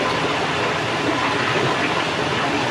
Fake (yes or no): no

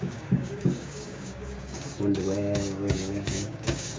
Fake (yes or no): yes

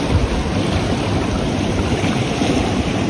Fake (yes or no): no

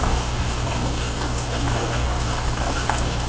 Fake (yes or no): yes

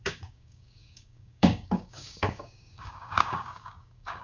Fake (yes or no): yes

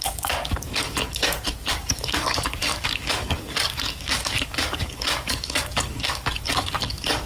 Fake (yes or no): yes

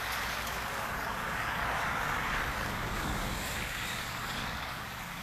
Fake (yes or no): yes